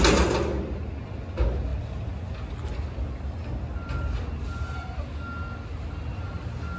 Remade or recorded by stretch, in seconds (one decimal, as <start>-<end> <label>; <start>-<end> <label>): 0.0-6.8 recorded